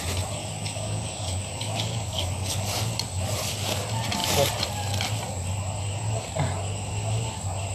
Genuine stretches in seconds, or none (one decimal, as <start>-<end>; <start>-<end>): 0.0-0.4; 2.6-7.7